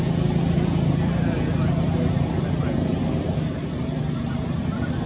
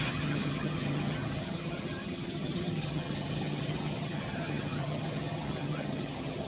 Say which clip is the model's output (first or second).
second